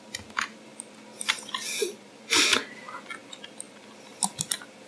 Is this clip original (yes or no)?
yes